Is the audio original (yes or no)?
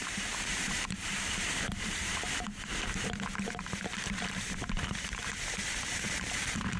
no